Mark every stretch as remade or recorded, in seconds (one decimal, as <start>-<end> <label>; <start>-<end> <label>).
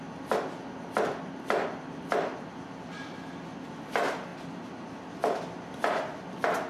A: 0.0-6.7 recorded